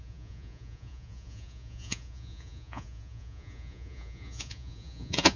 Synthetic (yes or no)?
yes